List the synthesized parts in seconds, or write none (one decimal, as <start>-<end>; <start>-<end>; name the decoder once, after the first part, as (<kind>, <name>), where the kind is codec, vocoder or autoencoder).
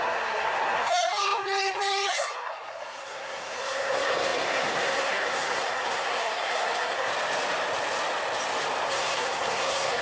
0.0-7.1 (codec, SNAC); 8.9-10.0